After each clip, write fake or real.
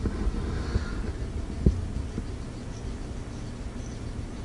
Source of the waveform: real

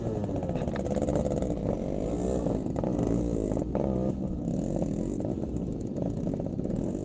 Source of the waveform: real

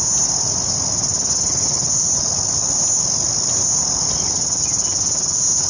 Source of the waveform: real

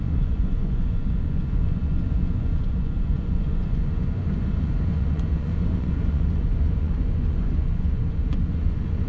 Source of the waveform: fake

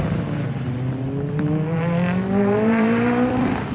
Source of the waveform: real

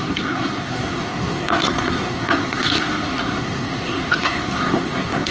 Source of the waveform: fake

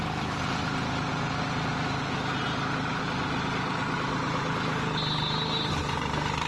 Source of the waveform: real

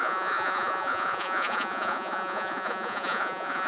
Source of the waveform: fake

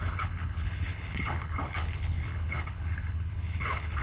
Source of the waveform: fake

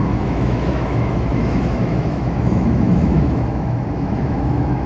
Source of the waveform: fake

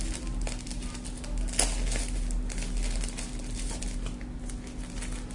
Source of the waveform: real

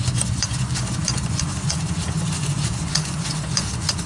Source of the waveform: fake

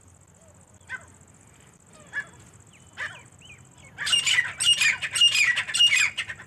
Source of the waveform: real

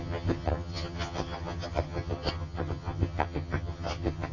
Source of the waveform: fake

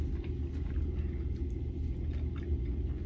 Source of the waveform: real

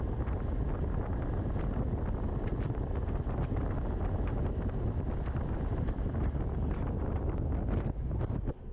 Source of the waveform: real